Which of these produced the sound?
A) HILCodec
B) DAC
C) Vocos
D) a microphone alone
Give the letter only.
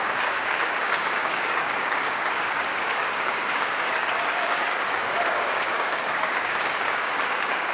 B